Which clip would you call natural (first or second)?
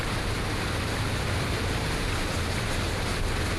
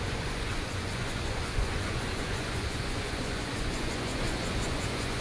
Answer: first